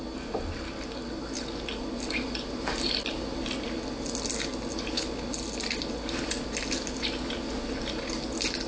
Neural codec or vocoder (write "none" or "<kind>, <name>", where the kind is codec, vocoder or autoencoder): none